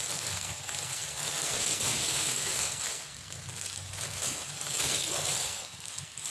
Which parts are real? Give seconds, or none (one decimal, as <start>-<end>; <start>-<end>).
none